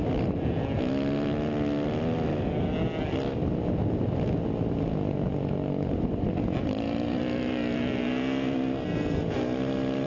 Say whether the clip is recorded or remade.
recorded